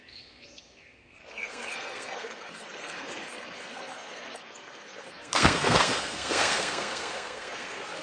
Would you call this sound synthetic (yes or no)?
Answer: yes